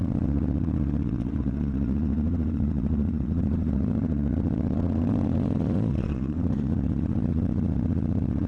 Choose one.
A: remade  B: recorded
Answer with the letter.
A